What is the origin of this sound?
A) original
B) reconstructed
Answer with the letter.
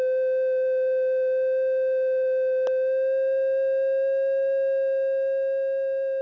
A